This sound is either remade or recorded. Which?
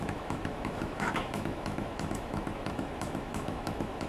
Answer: remade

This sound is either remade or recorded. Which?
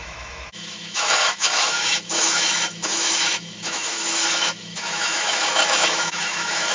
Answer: remade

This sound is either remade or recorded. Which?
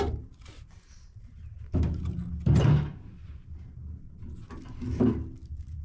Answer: recorded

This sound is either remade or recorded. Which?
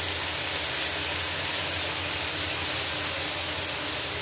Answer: recorded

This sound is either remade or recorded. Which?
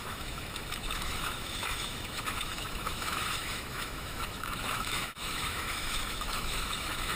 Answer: remade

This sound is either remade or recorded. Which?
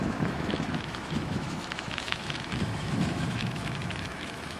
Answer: remade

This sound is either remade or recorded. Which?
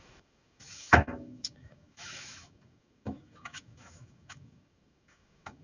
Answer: remade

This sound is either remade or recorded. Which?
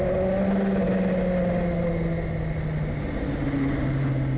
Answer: recorded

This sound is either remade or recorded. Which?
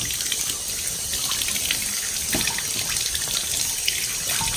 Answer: recorded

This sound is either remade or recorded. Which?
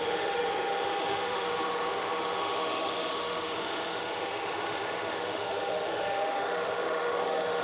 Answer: remade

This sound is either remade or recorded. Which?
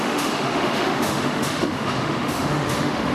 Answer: remade